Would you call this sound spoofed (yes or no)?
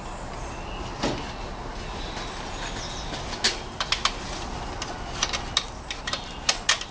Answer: no